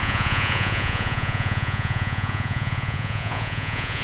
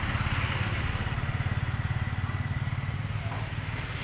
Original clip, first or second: second